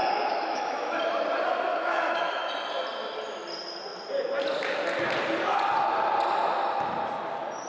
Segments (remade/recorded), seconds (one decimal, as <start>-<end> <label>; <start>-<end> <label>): 0.0-1.0 remade; 1.0-1.7 recorded; 1.7-2.5 remade; 2.5-7.7 recorded